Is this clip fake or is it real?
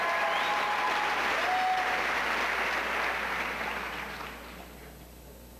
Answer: real